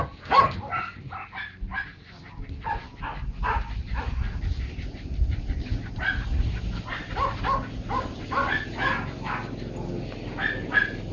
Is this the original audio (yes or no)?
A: yes